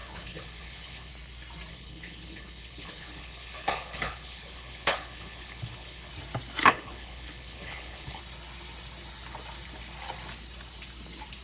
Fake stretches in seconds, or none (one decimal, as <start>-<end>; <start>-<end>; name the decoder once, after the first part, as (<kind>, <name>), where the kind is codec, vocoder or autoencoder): 0.0-1.1 (codec, HILCodec); 1.7-6.1; 6.6-8.2